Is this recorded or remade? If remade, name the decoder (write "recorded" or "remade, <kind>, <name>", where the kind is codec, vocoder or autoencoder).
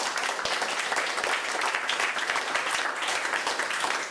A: recorded